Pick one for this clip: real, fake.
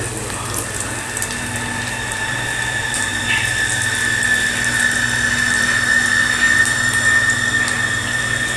real